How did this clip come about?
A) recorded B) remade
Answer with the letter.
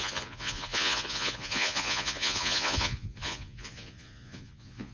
B